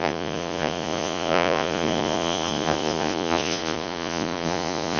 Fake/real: fake